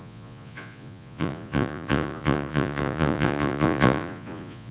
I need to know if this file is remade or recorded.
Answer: remade